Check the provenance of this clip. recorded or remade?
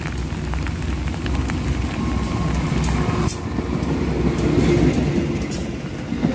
recorded